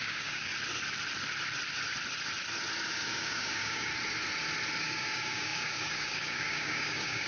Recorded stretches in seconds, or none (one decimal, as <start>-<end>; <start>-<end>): 0.5-2.9; 3.9-4.8